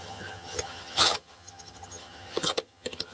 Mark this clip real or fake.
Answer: fake